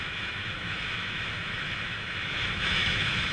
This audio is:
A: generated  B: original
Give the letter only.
A